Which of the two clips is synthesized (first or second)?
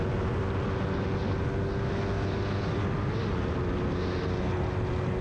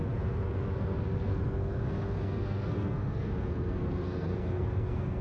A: second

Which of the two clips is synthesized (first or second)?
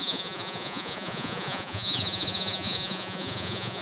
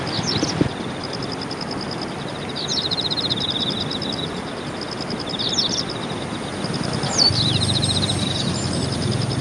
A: first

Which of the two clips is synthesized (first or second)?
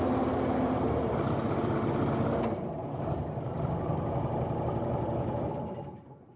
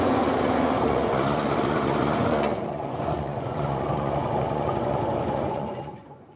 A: second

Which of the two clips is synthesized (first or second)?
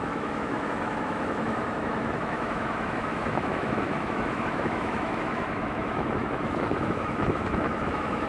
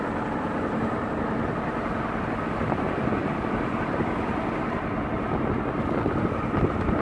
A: first